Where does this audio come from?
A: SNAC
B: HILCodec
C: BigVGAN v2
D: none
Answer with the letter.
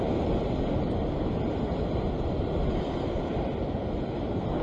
D